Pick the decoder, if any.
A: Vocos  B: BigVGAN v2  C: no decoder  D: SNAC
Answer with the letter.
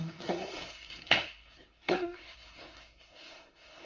D